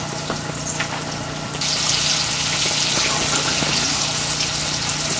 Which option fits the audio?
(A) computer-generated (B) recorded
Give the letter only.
B